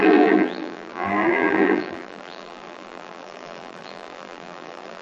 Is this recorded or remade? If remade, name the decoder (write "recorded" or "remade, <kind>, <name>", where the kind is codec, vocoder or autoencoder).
remade, vocoder, BigVGAN v2